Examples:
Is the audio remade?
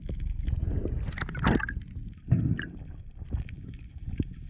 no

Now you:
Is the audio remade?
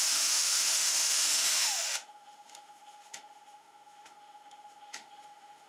yes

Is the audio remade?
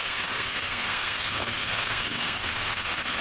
yes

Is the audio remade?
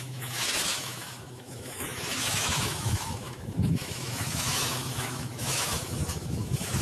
yes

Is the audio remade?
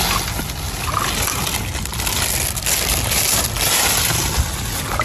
no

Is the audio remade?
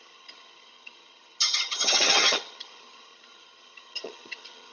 yes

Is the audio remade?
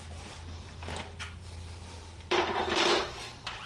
yes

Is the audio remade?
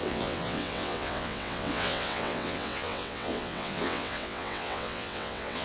yes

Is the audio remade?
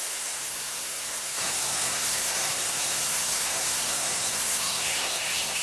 yes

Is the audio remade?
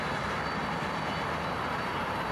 no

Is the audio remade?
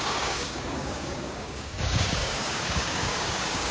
yes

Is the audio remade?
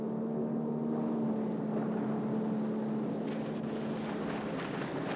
no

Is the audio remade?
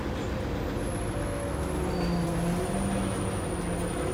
no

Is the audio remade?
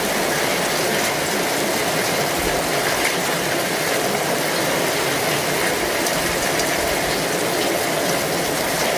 no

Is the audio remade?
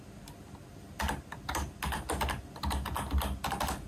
no